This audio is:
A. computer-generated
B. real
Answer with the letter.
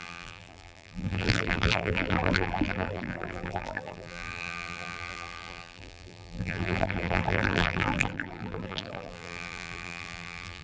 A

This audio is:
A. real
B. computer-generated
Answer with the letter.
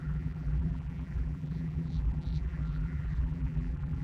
B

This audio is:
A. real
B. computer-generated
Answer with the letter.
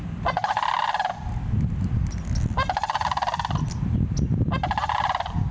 A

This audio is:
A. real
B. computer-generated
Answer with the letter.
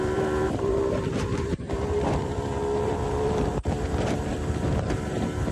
B